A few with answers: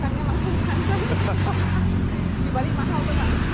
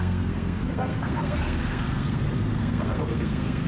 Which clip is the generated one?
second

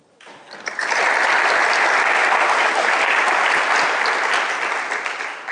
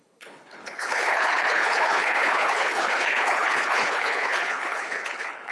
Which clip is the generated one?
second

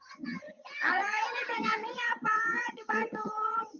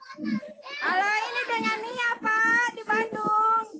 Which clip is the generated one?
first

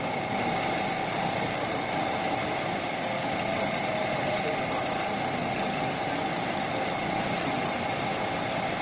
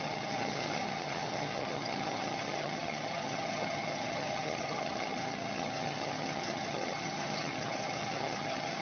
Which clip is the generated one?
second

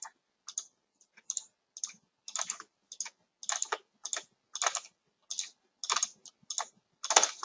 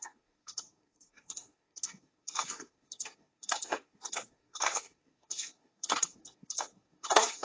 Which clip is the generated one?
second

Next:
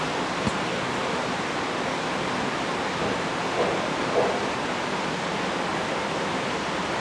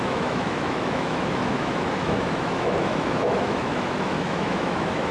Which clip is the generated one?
second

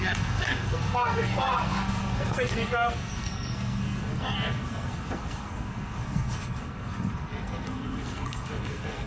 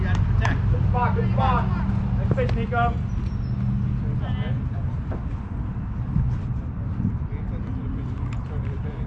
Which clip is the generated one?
first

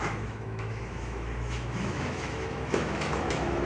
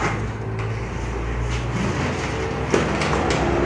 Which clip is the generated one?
first